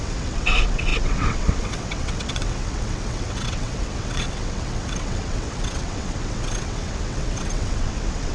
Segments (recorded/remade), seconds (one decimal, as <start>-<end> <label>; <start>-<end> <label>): 0.0-8.3 remade

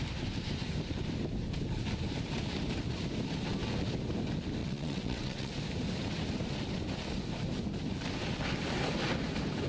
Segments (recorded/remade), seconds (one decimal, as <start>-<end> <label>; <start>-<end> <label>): 0.0-4.6 recorded; 4.6-5.5 remade; 5.5-9.7 recorded

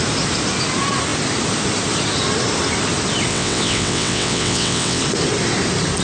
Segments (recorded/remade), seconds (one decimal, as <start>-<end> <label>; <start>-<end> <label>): 0.0-3.3 recorded; 3.3-5.0 remade; 5.0-6.0 recorded

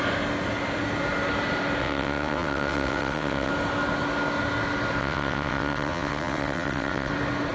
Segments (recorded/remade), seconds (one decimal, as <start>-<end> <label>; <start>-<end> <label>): 0.0-1.8 recorded; 1.8-3.5 remade; 3.5-5.0 recorded; 5.0-7.1 remade; 7.1-7.5 recorded

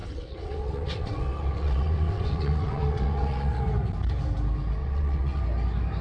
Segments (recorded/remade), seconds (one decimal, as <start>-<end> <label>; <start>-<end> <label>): 0.0-3.6 remade; 3.6-4.8 recorded; 4.8-5.4 remade; 5.4-6.0 recorded

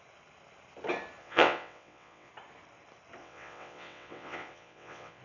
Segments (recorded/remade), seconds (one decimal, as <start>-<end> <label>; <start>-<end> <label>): 0.0-1.2 recorded; 1.2-2.3 remade; 2.3-3.2 recorded; 3.2-5.2 remade

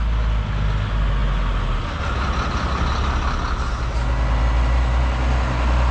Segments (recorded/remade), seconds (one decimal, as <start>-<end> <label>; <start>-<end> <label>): 0.0-5.9 recorded